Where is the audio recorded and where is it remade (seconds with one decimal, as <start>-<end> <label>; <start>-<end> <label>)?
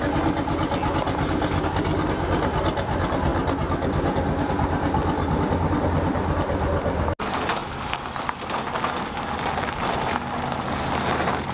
0.0-11.5 recorded